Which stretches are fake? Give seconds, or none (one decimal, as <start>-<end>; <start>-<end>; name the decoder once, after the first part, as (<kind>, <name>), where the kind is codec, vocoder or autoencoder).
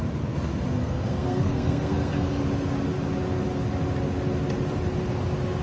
0.8-2.4 (codec, SNAC)